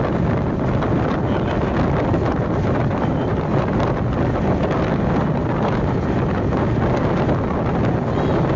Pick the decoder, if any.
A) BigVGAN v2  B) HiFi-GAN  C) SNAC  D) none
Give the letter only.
D